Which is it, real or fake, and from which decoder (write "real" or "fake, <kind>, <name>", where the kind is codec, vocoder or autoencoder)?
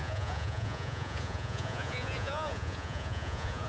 fake, vocoder, Vocos